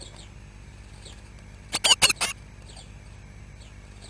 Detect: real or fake real